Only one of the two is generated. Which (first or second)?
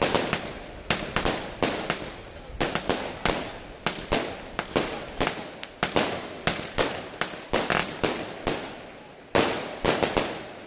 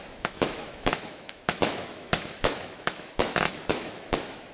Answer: second